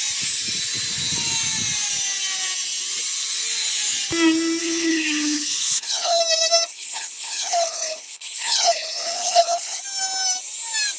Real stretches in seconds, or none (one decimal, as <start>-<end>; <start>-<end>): 0.0-4.6; 6.2-6.7; 9.8-11.0

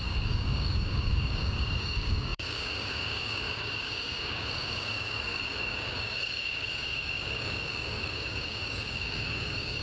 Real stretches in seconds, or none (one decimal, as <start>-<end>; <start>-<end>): none

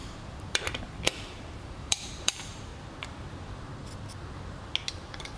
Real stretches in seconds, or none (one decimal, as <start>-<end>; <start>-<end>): 2.7-4.9

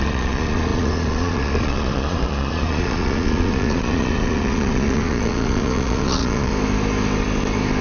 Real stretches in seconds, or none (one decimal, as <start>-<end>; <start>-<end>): 6.5-7.8

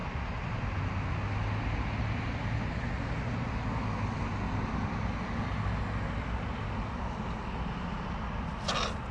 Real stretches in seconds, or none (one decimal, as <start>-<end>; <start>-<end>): 0.0-9.1

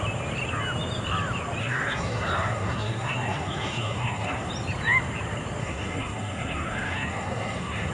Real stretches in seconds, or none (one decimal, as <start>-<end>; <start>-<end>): 0.0-1.6; 4.5-5.6

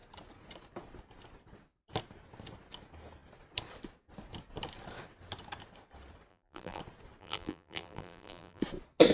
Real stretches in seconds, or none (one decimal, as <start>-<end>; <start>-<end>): 0.0-6.3; 6.8-7.2; 8.6-9.1

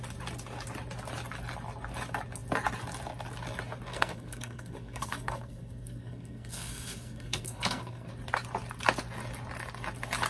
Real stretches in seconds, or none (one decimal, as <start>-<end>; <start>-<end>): 0.0-3.9; 8.1-10.3